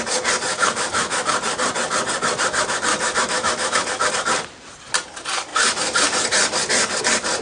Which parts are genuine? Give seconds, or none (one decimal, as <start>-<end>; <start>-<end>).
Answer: 0.0-0.5; 1.2-2.9; 4.1-7.4